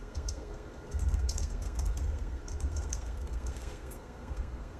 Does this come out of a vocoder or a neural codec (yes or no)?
yes